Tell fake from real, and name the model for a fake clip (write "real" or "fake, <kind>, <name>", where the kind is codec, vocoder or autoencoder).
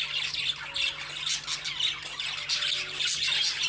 real